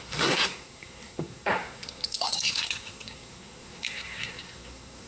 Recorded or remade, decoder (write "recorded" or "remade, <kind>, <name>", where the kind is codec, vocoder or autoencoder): remade, codec, SNAC